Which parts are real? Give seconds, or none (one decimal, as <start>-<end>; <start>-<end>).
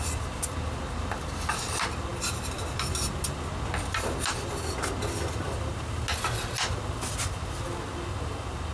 0.0-8.7